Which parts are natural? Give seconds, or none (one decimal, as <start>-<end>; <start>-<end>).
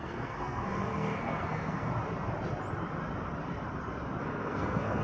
1.9-4.2